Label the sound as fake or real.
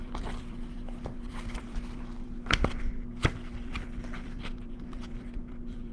fake